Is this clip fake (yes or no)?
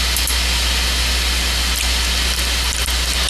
no